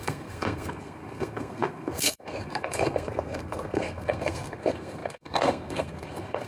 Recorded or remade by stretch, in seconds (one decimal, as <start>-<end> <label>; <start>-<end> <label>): 0.0-6.5 remade